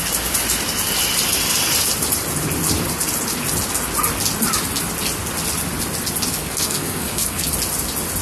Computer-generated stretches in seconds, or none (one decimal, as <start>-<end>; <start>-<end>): 6.3-7.5